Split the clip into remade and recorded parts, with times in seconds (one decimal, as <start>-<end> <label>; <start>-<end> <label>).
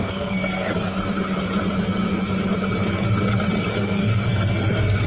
0.0-0.7 remade; 0.7-3.8 recorded; 3.8-5.1 remade